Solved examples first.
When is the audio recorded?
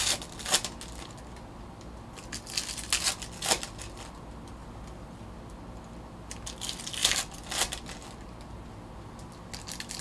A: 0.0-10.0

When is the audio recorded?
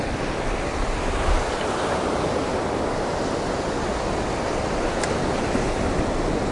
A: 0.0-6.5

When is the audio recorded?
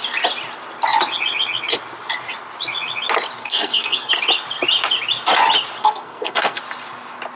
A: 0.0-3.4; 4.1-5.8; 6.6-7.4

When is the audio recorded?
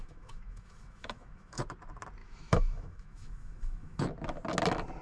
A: 1.6-2.2; 4.0-5.0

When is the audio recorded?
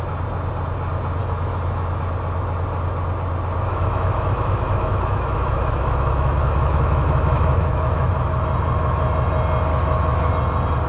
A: 0.0-1.2; 2.0-3.7; 8.1-9.7; 10.3-10.9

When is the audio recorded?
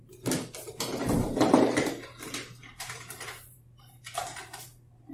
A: none